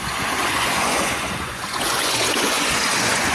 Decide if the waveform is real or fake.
fake